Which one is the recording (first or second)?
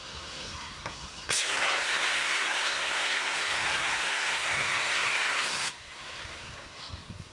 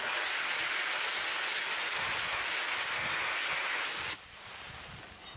second